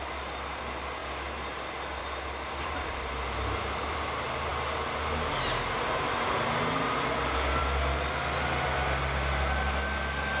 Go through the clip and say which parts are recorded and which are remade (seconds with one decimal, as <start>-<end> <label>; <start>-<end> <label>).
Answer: 0.0-10.4 recorded